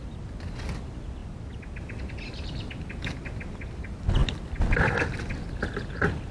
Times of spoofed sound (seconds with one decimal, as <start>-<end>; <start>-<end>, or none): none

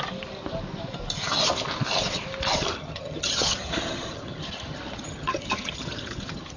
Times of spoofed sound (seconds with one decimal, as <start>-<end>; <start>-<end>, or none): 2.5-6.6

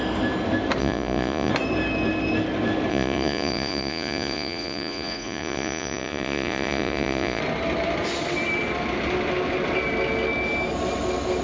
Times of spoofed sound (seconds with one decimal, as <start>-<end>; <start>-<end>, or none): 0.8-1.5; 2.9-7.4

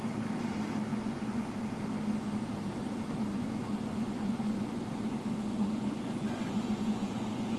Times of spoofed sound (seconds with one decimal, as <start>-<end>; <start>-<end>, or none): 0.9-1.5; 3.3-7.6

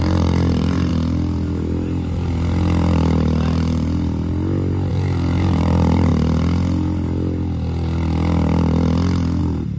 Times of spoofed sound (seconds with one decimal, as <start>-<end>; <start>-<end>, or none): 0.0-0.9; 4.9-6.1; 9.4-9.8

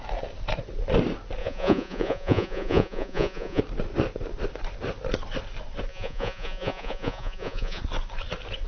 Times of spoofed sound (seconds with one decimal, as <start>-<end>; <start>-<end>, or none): 1.4-3.6; 5.9-7.8

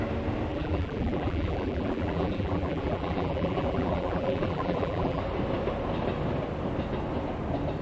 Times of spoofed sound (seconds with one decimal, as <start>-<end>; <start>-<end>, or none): 0.5-5.2